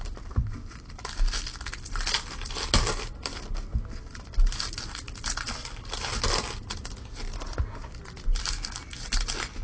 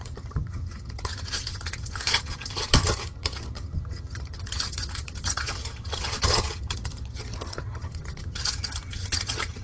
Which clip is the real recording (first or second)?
first